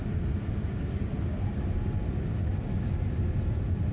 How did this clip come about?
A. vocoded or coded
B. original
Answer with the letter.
B